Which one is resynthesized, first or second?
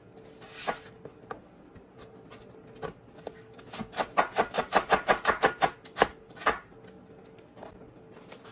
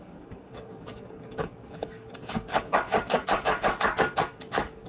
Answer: second